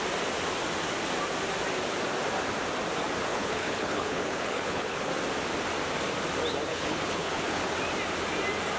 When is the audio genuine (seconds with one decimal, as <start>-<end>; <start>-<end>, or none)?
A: 0.0-3.3; 5.1-6.7; 7.6-8.8